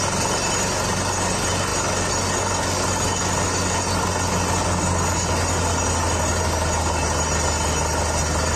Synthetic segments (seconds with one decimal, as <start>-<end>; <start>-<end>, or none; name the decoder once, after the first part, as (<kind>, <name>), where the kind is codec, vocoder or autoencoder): none